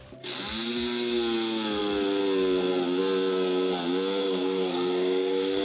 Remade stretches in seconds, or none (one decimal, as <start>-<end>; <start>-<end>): 4.2-5.6